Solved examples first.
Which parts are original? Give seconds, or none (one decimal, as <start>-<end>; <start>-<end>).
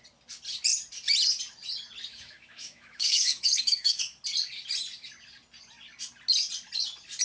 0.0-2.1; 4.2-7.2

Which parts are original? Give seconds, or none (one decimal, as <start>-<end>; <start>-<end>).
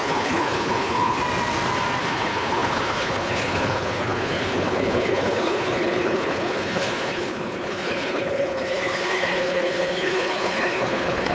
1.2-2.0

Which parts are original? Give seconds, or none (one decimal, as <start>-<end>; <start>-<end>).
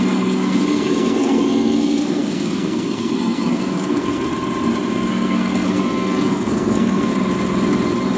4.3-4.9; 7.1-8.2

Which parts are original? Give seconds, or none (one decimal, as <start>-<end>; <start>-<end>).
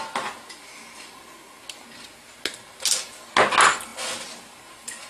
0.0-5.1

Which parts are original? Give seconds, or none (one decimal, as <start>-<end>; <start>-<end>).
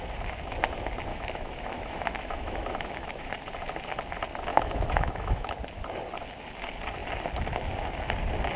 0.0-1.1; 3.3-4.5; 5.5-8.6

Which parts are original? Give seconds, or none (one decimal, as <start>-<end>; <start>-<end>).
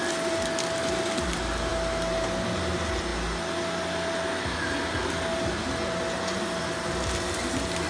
0.0-7.9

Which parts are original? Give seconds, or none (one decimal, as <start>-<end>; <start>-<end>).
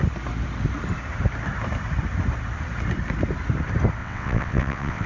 0.0-4.0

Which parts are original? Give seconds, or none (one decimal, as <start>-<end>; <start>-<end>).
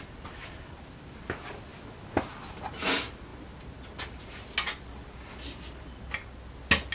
0.0-6.9